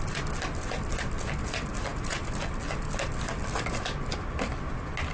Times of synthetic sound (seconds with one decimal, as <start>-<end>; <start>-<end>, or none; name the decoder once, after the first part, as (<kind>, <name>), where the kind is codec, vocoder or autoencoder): none